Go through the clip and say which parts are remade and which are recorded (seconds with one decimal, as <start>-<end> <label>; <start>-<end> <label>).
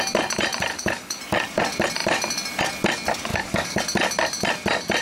0.0-0.7 recorded; 0.7-1.2 remade; 1.2-3.3 recorded; 3.3-3.8 remade; 3.8-5.0 recorded